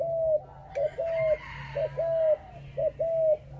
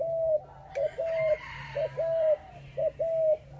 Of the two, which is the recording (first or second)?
first